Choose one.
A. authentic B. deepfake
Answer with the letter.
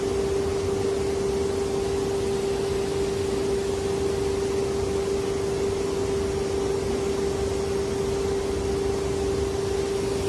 A